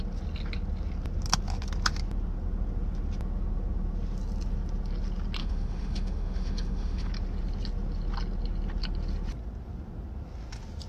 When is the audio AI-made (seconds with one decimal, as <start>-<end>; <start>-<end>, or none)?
5.4-7.1